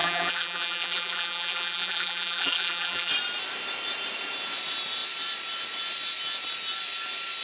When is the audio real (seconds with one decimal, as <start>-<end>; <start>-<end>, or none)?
3.1-7.4